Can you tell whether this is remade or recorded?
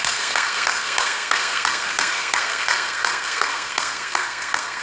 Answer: remade